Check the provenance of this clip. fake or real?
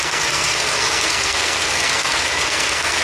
fake